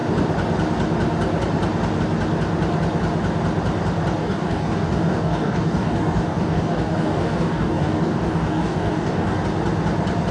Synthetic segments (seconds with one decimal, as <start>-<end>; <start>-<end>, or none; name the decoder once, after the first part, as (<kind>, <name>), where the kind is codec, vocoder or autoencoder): 4.2-9.4 (codec, DAC)